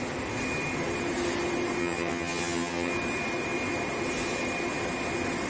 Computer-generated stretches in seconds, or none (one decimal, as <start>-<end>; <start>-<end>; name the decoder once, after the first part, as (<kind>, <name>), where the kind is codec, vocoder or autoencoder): 1.8-2.9 (vocoder, HiFi-GAN)